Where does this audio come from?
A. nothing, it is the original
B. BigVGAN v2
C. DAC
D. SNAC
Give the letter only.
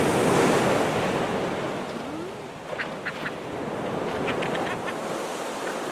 A